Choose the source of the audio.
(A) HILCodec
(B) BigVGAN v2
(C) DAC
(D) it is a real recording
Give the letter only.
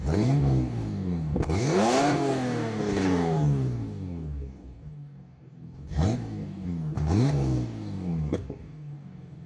C